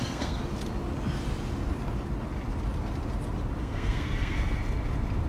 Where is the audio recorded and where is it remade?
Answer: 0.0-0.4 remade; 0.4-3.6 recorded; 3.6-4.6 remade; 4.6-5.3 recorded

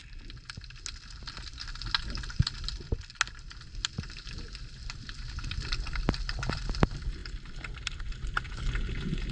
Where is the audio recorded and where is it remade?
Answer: 0.0-9.3 recorded

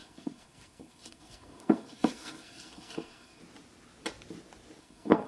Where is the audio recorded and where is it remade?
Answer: 0.0-3.4 remade; 3.4-4.8 recorded; 4.8-5.3 remade